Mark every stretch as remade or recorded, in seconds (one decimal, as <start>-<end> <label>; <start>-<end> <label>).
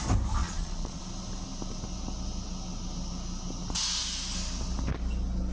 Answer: 0.0-0.4 recorded; 0.4-1.0 remade; 1.0-5.5 recorded